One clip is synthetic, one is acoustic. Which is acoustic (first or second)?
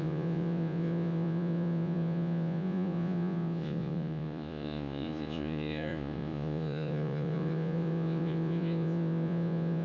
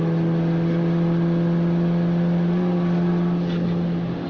second